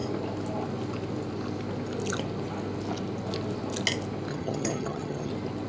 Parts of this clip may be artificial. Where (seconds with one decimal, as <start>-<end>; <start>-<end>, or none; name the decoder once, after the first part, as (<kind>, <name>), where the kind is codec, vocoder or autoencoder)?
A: 4.3-5.3 (vocoder, HiFi-GAN)